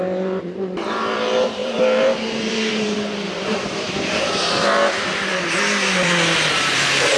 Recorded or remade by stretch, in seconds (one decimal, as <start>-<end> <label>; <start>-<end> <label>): 0.0-5.3 remade; 5.3-6.5 recorded; 6.5-7.2 remade